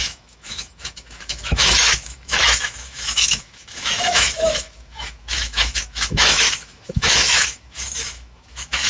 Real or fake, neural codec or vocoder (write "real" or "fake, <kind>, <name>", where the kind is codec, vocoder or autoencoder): fake, autoencoder, DAC-VAE